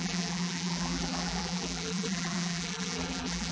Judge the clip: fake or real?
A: fake